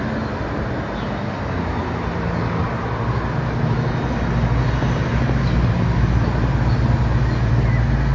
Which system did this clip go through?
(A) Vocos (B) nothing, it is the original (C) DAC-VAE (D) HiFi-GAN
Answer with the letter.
B